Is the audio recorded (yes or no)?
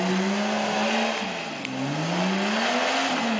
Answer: yes